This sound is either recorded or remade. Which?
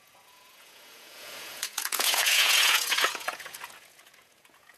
remade